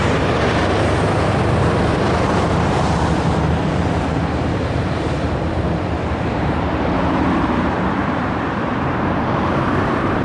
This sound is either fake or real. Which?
fake